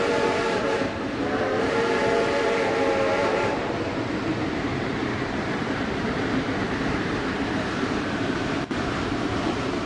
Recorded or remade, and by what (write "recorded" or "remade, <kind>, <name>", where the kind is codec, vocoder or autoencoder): remade, vocoder, BigVGAN v2